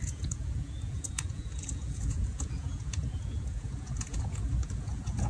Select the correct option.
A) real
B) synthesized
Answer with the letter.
B